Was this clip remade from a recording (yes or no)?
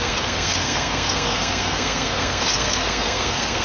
yes